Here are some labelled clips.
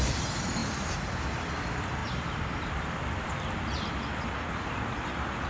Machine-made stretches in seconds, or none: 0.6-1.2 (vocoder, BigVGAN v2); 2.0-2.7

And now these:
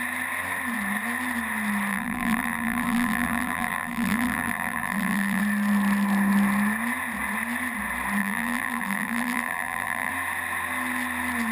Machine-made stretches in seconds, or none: 1.9-5.4 (vocoder, BigVGAN v2); 8.2-10.1

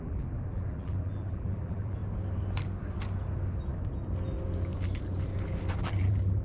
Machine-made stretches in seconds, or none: 0.0-2.0 (vocoder, BigVGAN v2); 5.8-6.4

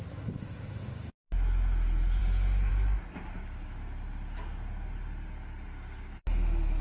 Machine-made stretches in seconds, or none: none

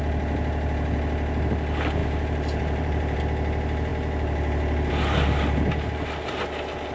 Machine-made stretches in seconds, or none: 2.0-3.2 (vocoder, BigVGAN v2)